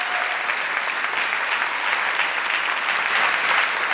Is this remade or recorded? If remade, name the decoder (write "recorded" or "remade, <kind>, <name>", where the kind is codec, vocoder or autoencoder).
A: recorded